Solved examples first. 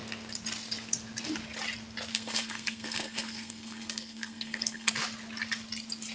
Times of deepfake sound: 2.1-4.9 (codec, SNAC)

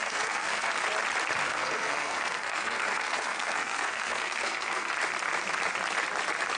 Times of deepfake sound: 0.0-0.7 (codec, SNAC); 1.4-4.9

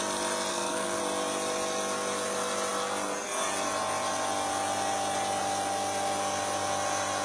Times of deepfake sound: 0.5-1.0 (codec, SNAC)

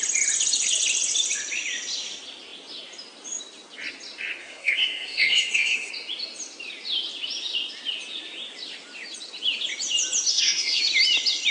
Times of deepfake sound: 4.4-5.9 (codec, SNAC); 10.3-10.8

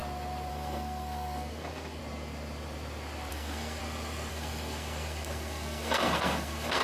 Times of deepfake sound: 0.5-2.0 (codec, SNAC); 3.3-3.8; 4.3-6.8

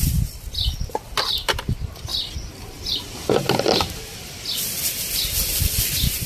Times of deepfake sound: none

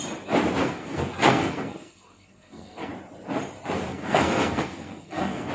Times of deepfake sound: 0.6-2.9 (codec, SNAC); 3.9-5.5

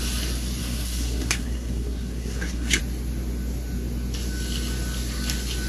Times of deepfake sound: 0.6-2.8 (codec, SNAC)